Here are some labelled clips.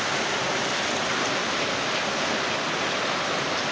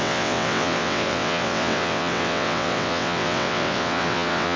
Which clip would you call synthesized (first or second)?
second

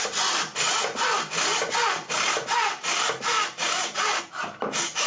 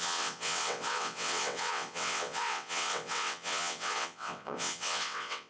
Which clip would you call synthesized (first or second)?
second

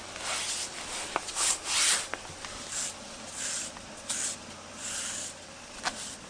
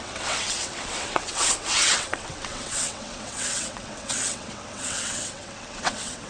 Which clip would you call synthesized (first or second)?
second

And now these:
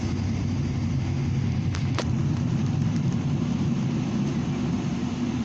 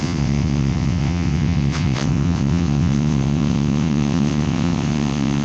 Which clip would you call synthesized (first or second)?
second